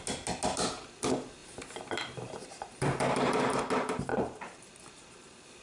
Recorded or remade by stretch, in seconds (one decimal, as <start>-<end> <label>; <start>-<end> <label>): 0.0-1.4 recorded; 1.4-3.6 remade; 3.6-4.1 recorded; 4.1-4.6 remade; 4.6-5.6 recorded